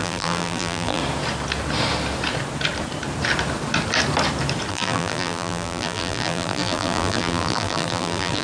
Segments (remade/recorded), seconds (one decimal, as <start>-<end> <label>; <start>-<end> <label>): 0.0-1.0 remade; 1.0-4.7 recorded; 4.7-8.4 remade